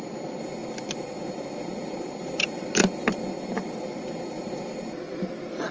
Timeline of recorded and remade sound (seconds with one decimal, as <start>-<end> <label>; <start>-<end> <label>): 0.0-5.7 recorded